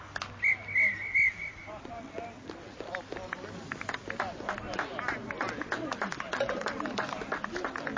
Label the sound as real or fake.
real